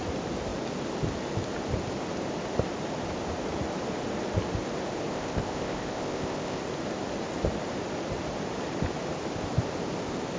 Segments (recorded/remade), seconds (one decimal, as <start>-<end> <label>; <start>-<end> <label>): 0.0-5.1 recorded; 5.1-6.6 remade; 6.6-10.4 recorded